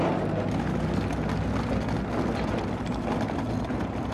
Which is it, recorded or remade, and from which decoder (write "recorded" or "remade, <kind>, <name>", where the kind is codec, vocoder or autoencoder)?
recorded